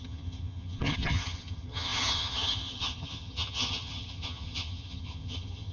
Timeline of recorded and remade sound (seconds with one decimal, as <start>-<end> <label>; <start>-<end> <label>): 0.0-5.7 remade